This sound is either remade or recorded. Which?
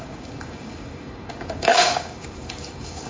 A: remade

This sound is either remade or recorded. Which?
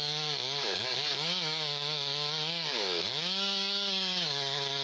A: remade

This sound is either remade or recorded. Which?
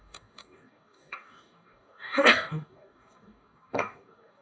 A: remade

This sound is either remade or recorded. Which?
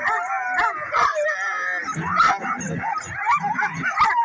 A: recorded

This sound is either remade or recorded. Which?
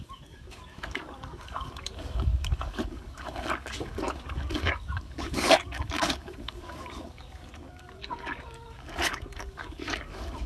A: remade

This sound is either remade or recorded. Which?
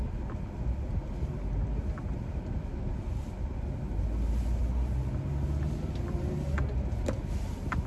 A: recorded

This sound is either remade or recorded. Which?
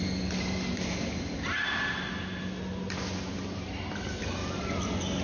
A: recorded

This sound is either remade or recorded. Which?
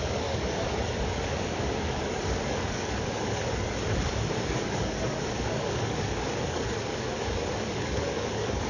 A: remade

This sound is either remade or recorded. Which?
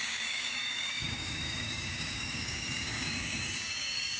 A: remade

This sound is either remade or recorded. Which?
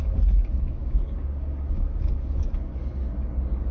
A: remade